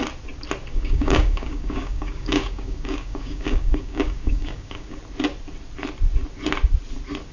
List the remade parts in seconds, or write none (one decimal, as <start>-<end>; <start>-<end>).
0.7-5.0